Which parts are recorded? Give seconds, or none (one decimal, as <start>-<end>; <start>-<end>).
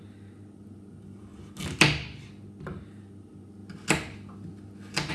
1.3-2.6; 3.6-5.1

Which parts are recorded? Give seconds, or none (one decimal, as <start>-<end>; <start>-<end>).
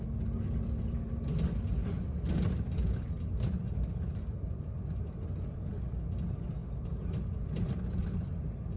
0.0-8.8